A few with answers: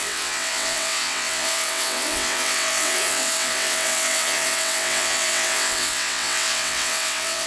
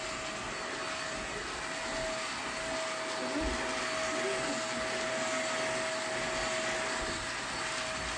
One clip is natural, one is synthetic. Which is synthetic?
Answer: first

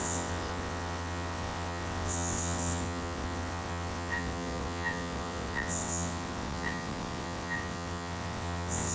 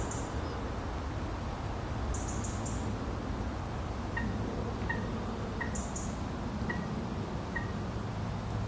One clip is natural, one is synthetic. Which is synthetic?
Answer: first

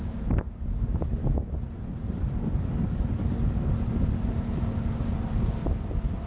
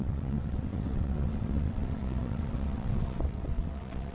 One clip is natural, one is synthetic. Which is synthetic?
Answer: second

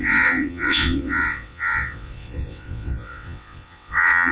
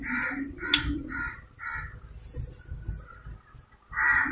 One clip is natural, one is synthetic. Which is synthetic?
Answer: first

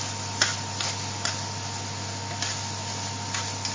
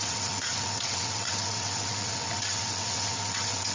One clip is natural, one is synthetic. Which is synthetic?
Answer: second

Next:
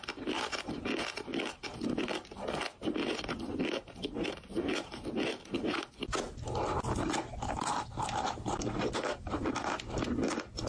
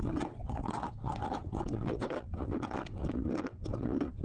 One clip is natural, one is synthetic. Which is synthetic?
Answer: second